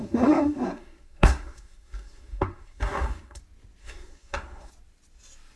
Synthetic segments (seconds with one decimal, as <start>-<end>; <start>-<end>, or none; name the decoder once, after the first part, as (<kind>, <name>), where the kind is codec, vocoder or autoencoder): 0.0-3.4 (codec, SNAC); 3.8-4.7

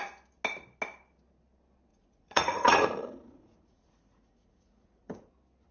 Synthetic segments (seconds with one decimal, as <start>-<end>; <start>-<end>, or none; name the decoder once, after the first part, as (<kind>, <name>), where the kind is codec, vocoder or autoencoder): 1.9-5.3 (vocoder, Vocos)

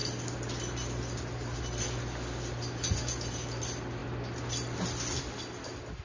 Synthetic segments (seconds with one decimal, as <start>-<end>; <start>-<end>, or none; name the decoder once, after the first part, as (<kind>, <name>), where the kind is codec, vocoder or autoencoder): none

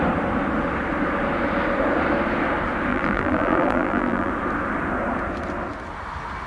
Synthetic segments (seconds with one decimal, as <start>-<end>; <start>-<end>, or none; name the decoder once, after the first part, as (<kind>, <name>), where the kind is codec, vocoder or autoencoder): 2.9-4.3 (vocoder, BigVGAN v2)

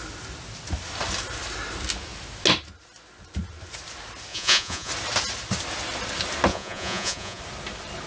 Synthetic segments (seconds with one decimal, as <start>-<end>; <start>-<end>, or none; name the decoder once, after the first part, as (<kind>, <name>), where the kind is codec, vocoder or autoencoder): 4.3-4.9 (vocoder, Vocos); 6.5-7.4

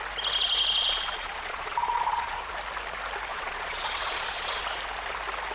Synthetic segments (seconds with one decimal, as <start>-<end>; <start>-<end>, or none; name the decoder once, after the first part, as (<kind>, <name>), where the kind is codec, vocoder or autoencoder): 0.8-2.5 (vocoder, Vocos); 3.3-4.6

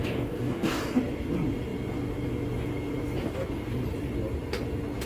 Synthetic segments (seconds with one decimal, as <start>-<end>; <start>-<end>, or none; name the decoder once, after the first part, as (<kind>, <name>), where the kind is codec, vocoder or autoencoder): 0.0-0.8 (codec, DAC)